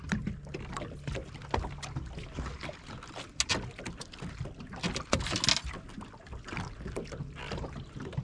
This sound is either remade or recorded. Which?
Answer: recorded